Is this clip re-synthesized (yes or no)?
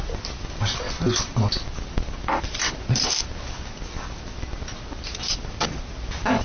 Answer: no